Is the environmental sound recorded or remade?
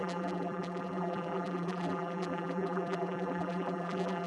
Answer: remade